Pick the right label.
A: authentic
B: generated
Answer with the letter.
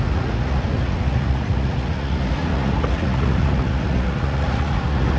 B